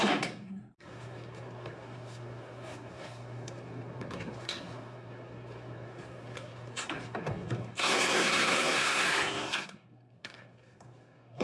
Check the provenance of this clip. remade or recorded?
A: remade